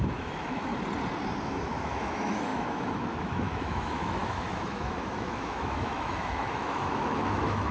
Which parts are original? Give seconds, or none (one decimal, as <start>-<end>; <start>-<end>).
0.7-1.4